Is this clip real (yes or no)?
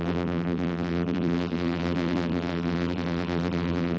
no